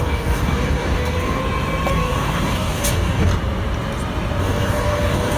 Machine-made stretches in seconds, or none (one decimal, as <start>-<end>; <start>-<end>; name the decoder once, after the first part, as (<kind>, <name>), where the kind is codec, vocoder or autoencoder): 0.0-1.4 (codec, DAC); 1.9-3.3; 4.4-5.4